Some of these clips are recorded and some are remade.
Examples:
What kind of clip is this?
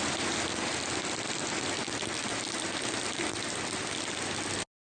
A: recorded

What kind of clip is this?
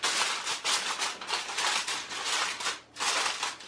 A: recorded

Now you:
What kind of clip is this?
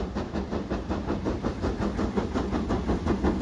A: recorded